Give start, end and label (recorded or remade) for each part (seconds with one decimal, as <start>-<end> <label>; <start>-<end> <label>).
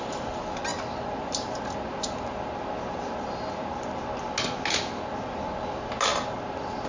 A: 0.0-6.9 recorded